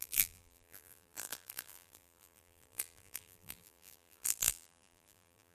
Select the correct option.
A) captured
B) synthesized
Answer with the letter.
B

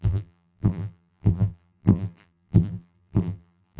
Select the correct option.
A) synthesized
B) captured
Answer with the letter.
A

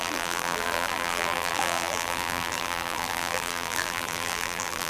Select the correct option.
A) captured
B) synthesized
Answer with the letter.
B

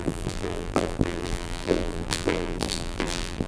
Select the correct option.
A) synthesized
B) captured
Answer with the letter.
A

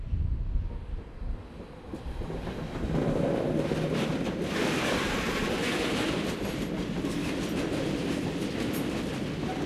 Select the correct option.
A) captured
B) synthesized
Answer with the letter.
A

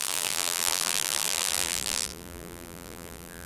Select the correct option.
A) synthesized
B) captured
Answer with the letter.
A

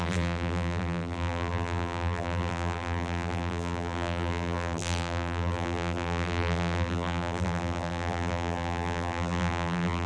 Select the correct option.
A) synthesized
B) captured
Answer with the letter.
A